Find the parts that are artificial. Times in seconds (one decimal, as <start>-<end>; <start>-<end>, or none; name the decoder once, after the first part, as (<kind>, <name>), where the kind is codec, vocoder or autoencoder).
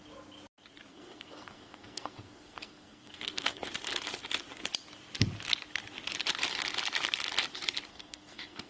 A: 0.9-3.7 (codec, SNAC); 7.9-8.7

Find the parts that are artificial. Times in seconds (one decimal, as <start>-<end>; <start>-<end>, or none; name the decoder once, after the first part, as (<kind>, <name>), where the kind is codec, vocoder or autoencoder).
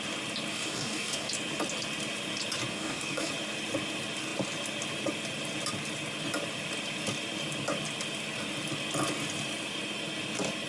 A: 0.5-1.3 (codec, DAC); 2.7-3.3